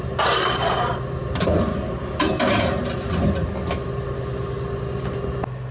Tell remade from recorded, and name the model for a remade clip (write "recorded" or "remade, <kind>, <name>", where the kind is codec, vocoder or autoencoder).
recorded